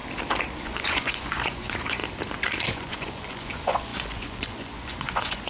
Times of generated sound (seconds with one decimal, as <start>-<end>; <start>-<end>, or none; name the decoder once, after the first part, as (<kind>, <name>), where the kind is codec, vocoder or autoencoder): 0.6-2.0 (vocoder, Vocos); 2.7-5.5

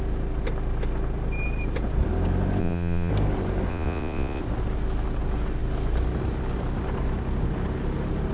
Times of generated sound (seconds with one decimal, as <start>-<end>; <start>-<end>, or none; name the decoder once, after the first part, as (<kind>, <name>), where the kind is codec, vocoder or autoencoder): 2.6-3.1 (vocoder, Vocos); 3.7-4.4

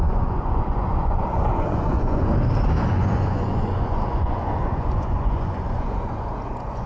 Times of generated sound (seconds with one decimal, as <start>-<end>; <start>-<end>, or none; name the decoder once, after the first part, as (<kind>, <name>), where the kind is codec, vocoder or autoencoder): 0.0-2.3 (vocoder, Vocos); 2.9-6.9

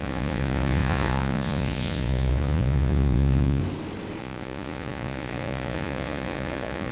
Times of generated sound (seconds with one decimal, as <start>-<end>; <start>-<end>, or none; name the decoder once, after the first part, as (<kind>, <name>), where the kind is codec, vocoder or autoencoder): 0.0-3.6 (vocoder, Vocos); 4.2-6.9

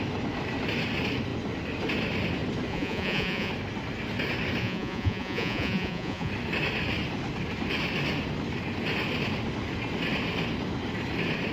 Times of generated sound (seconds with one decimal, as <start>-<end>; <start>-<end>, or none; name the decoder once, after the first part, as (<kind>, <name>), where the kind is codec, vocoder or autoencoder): 2.7-3.5 (vocoder, Vocos); 4.6-6.3

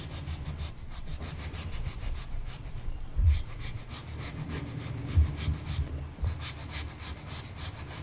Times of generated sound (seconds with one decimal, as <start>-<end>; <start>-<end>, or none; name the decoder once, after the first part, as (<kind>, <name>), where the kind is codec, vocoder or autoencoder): 0.7-1.2 (vocoder, Vocos); 1.7-3.9

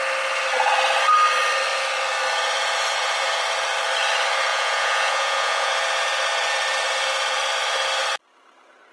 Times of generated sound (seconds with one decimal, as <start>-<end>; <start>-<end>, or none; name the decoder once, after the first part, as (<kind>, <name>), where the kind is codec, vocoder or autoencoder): 4.5-5.7 (vocoder, Vocos)

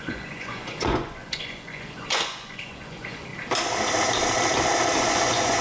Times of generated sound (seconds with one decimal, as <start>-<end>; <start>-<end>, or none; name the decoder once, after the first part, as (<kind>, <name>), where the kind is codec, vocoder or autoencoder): 0.0-3.3 (vocoder, Vocos); 5.0-5.6